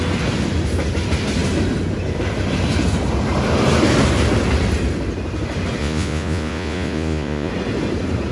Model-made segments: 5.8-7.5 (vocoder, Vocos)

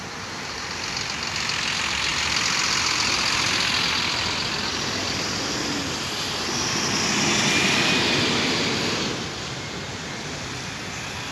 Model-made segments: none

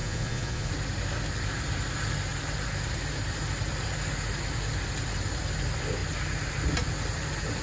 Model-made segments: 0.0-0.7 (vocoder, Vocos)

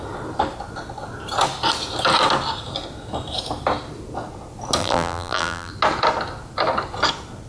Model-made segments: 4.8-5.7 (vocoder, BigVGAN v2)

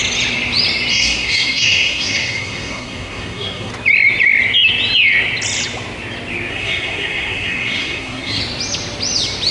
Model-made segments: 0.9-3.7 (codec, SNAC); 6.5-8.4

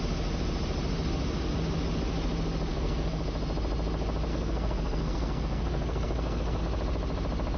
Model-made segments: 2.7-3.2 (codec, SNAC); 4.3-6.6

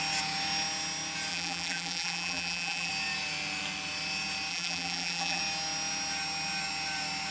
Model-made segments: 1.3-2.9 (vocoder, BigVGAN v2); 4.5-5.4

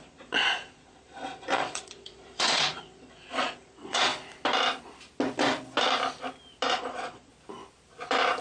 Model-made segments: 0.0-4.1 (vocoder, Vocos); 6.7-7.3